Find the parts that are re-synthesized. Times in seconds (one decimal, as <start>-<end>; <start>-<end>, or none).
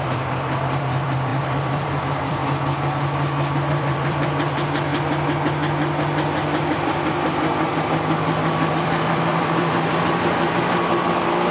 0.0-2.4; 3.7-4.9; 8.7-11.5